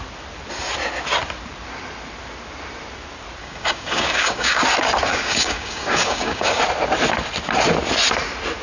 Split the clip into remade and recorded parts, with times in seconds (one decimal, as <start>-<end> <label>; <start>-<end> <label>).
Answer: 0.0-3.4 recorded; 3.4-4.6 remade; 4.6-5.1 recorded; 5.1-6.6 remade; 6.6-8.6 recorded